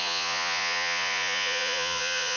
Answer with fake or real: fake